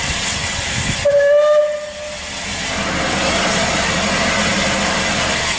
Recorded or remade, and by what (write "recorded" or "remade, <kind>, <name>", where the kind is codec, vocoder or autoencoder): recorded